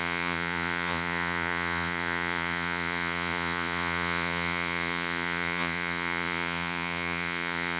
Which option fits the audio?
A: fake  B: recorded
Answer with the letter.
A